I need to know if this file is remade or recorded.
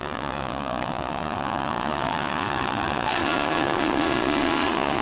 remade